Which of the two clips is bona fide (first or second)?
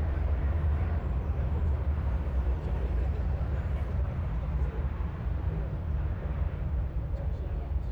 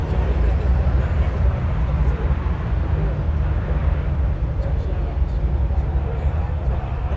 second